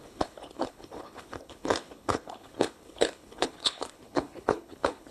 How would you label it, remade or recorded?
remade